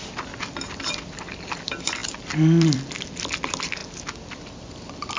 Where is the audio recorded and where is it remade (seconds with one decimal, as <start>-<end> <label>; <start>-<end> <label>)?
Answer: 0.0-0.9 recorded; 0.9-3.8 remade; 3.8-4.4 recorded; 4.4-5.2 remade